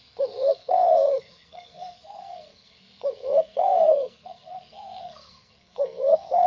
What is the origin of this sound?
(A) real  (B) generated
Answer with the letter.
B